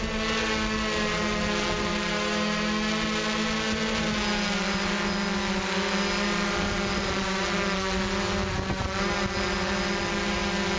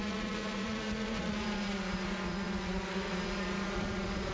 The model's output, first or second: second